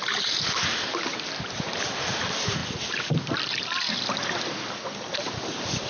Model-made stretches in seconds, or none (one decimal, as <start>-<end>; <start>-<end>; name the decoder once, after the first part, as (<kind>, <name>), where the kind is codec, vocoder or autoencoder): none